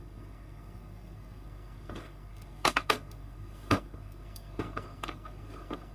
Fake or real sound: fake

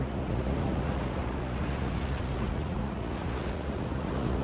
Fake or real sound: fake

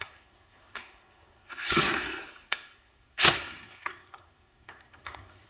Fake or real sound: fake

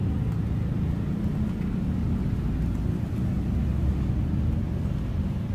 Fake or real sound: real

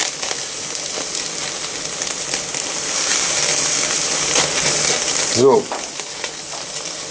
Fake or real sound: real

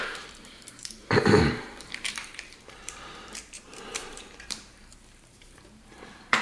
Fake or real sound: fake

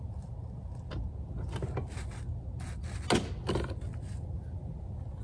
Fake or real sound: real